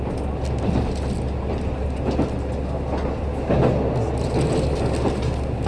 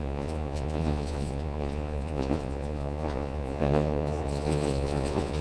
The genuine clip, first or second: first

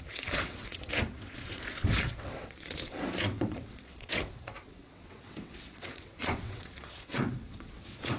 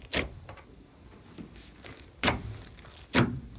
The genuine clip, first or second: second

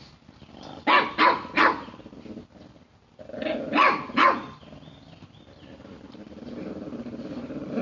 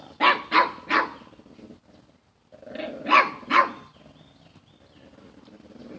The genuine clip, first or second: second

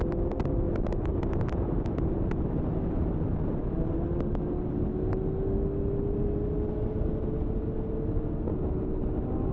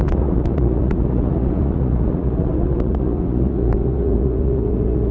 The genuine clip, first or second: first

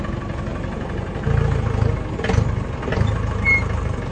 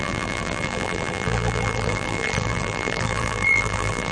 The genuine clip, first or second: first